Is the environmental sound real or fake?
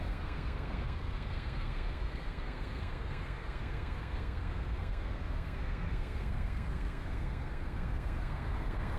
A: fake